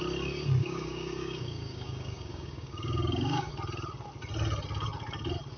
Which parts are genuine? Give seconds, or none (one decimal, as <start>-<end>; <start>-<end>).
0.0-0.6; 3.5-5.6